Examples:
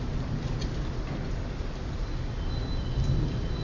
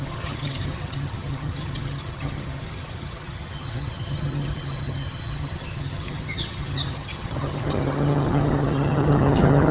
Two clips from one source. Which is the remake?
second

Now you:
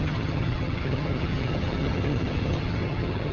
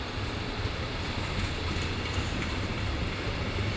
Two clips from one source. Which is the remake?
first